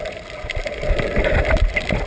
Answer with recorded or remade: recorded